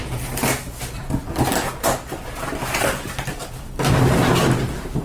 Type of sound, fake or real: real